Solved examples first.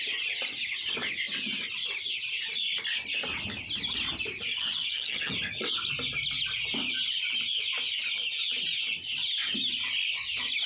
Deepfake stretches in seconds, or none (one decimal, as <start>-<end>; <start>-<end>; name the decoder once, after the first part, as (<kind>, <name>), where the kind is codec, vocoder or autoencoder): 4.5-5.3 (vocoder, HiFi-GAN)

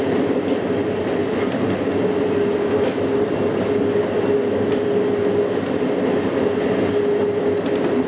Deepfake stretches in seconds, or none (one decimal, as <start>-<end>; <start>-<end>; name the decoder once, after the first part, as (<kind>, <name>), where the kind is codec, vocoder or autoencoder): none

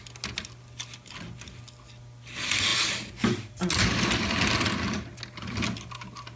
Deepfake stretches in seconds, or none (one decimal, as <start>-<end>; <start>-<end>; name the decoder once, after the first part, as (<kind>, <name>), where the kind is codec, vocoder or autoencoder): none

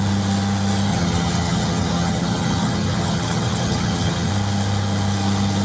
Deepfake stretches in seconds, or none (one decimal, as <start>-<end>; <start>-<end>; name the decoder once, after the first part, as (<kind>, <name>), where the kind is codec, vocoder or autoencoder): 0.9-4.3 (vocoder, HiFi-GAN)

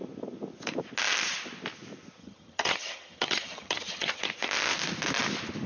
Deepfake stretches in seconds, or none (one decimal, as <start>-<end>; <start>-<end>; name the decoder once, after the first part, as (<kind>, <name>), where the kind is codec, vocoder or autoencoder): 2.2-4.2 (vocoder, HiFi-GAN)